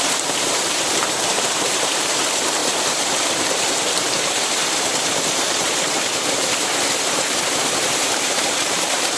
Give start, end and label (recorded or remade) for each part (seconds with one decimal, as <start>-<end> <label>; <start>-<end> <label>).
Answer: 0.0-9.2 remade